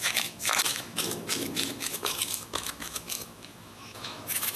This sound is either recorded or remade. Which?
remade